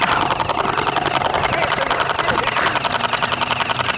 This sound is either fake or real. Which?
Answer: real